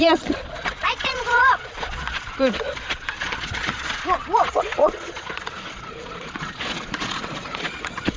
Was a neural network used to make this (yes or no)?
yes